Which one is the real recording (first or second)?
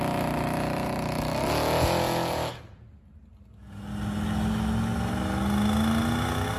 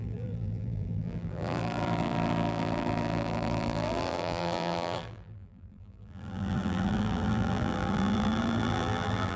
first